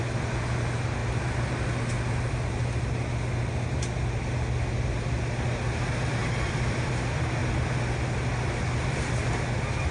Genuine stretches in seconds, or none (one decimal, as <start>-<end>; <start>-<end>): 0.0-9.9